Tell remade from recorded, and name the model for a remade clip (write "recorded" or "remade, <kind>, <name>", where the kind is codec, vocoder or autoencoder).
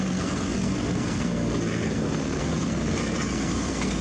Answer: remade, codec, SNAC